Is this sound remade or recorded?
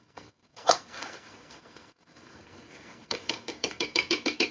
remade